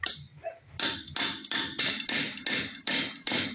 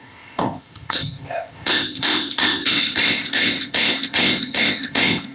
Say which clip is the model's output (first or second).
second